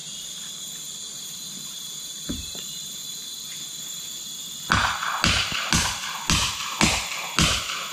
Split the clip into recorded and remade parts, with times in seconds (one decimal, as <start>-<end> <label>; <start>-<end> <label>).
0.0-3.8 remade; 3.8-7.9 recorded